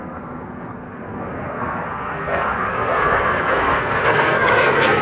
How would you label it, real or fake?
fake